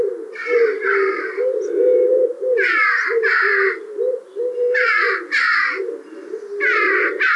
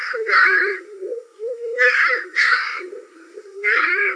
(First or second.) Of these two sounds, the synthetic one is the second